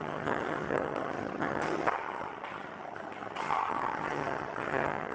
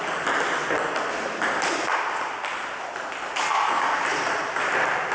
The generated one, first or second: first